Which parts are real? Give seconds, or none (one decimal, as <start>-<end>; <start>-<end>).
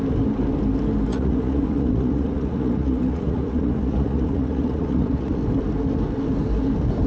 0.0-1.1; 5.4-7.1